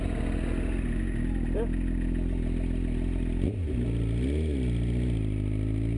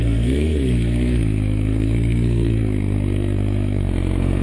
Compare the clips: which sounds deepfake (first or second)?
second